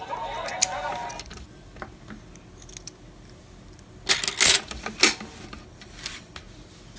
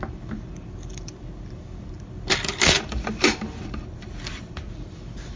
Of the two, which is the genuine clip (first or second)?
first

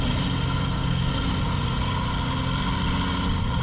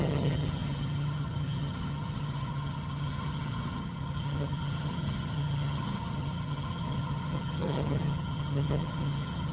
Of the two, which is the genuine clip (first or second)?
first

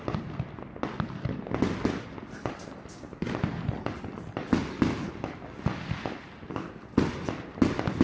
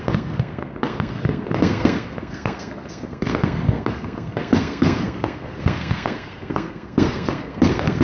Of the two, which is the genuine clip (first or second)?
first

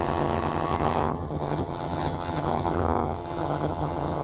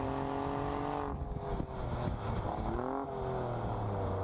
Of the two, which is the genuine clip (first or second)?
second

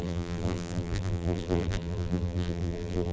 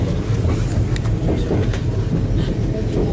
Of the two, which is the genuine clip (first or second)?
second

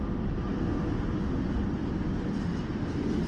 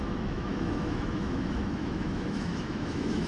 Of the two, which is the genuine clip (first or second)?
first